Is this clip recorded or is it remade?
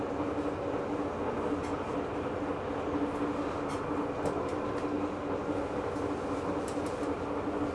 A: recorded